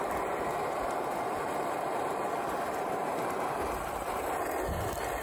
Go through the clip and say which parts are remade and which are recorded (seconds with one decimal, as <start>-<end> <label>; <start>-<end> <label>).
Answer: 0.0-0.6 recorded; 0.6-3.7 remade; 3.7-5.2 recorded